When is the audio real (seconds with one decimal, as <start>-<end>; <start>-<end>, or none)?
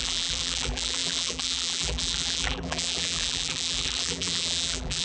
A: none